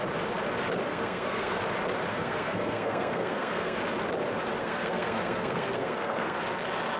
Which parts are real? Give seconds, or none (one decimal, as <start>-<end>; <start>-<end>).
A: 0.0-0.9; 1.6-2.1; 3.8-4.6; 6.4-7.0